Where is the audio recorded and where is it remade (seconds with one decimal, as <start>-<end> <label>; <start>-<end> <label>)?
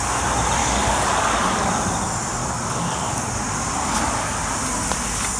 0.0-0.6 recorded; 0.6-1.7 remade; 1.7-2.4 recorded; 2.4-3.3 remade; 3.3-3.9 recorded; 3.9-4.4 remade; 4.4-5.4 recorded